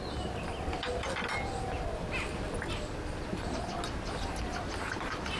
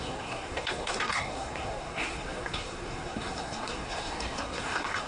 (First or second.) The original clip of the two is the first